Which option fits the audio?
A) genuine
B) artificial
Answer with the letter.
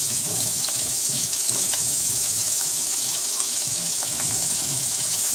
B